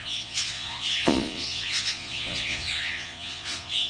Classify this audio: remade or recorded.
remade